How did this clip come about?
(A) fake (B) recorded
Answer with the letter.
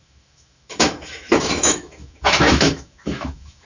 A